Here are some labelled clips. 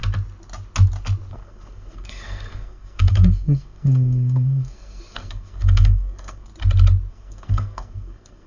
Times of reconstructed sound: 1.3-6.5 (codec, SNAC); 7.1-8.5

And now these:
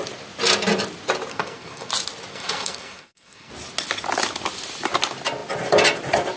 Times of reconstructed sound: 1.3-1.9 (codec, SNAC); 2.3-3.5

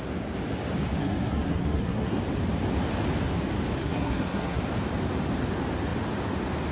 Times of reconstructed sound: 1.0-2.2 (codec, SNAC); 3.8-4.6